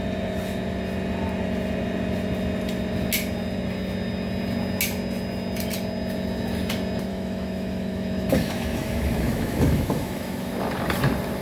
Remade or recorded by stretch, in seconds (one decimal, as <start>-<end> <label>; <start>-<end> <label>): 0.0-7.1 recorded; 7.1-10.5 remade; 10.5-11.4 recorded